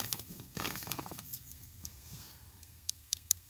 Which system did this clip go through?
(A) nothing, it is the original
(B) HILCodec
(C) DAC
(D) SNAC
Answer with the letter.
D